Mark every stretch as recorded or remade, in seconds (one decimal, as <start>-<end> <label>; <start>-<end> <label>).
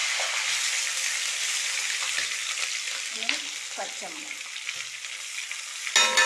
0.0-6.3 recorded